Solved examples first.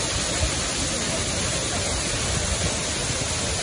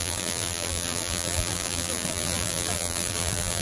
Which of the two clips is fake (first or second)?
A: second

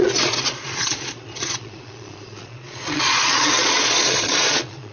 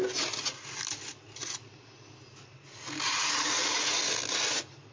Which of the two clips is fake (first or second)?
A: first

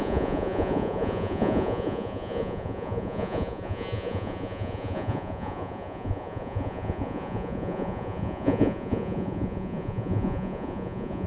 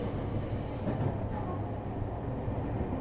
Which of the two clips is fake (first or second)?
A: first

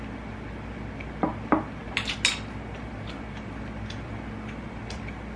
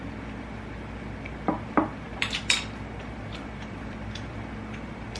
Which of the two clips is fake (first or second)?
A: second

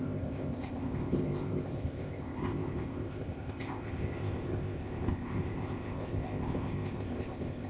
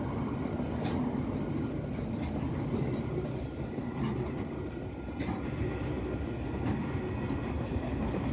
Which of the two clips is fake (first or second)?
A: first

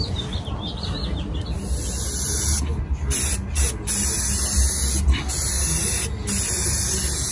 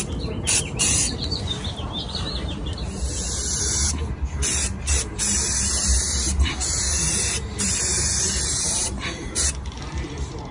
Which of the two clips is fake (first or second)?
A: second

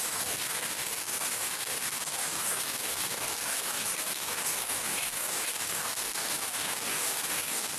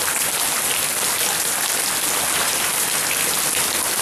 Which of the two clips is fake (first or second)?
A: first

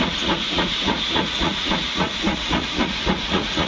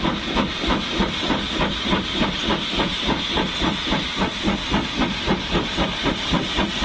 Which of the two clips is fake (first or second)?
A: first